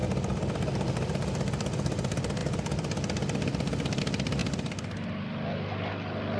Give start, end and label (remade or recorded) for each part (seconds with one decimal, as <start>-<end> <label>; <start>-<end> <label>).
0.0-6.4 recorded